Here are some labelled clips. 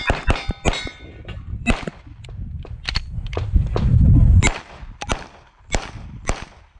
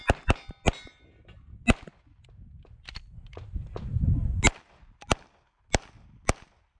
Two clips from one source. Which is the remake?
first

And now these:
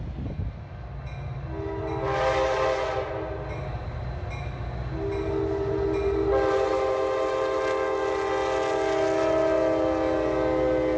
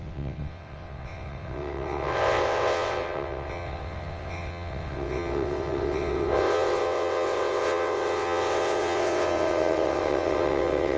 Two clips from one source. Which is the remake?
second